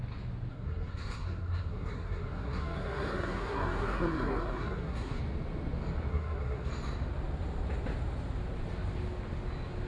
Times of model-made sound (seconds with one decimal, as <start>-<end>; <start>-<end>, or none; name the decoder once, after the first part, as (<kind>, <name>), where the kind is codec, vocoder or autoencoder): 0.5-5.2 (codec, SNAC); 6.1-6.7